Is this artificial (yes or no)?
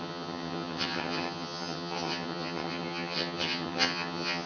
yes